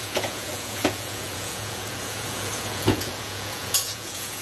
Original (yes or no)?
no